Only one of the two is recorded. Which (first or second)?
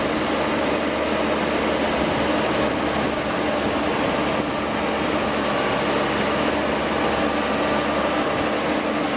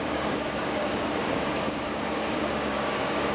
first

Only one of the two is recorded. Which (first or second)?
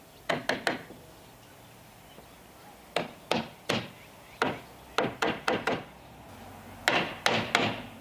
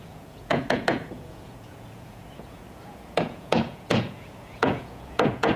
first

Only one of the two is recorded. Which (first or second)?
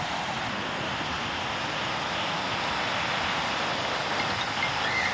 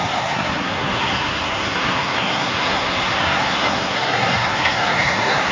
first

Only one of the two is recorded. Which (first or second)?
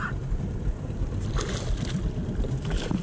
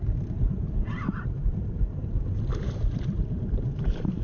first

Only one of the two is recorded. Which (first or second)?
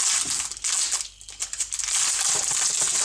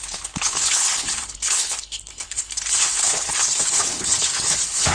first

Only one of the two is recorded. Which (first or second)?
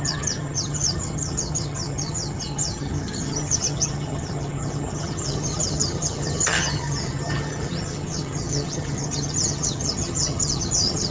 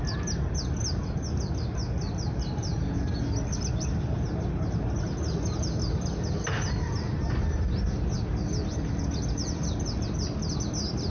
second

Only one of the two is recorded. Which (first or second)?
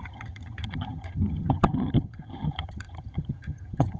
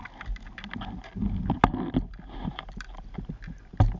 second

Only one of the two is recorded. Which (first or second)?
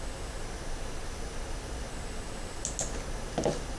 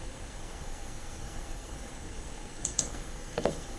first